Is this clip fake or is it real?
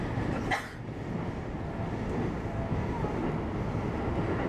real